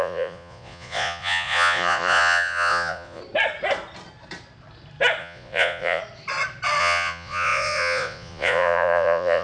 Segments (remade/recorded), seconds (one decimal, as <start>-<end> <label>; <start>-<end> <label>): 0.0-3.2 remade; 3.2-5.2 recorded; 5.2-6.0 remade; 6.0-6.8 recorded; 6.8-9.4 remade